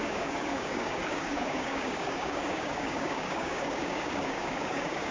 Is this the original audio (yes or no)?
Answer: no